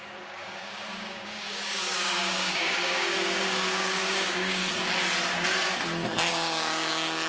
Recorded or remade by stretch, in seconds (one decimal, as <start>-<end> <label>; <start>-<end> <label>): 0.0-4.6 remade; 4.6-6.3 recorded; 6.3-7.3 remade